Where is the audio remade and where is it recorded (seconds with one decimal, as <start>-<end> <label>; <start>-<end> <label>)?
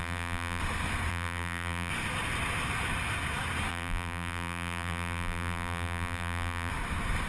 0.0-0.6 remade; 0.6-1.1 recorded; 1.1-1.9 remade; 1.9-3.7 recorded; 3.7-6.7 remade; 6.7-7.3 recorded